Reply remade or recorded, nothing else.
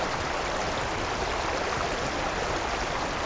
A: recorded